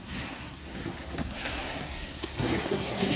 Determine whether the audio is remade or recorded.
remade